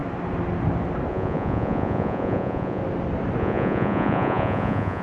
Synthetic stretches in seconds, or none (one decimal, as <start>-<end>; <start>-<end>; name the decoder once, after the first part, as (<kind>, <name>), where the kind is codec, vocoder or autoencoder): 1.1-2.8 (vocoder, Vocos); 3.4-5.0